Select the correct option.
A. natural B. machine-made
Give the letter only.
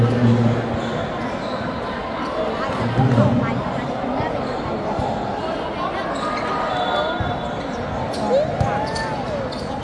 A